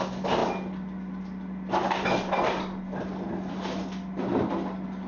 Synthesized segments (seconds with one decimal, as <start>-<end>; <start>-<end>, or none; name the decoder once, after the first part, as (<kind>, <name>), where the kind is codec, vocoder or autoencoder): none